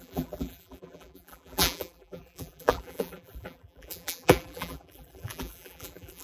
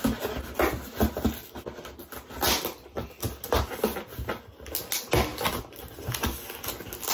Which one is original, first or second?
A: second